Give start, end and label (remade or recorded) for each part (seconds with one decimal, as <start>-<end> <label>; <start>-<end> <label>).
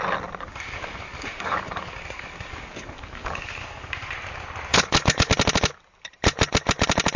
0.0-0.5 recorded; 0.5-4.1 remade; 4.1-4.7 recorded; 4.7-5.3 remade; 5.3-7.2 recorded